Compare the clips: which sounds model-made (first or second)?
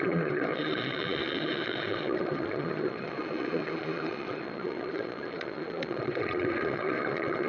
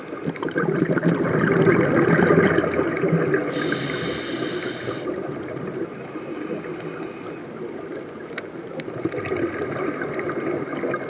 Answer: first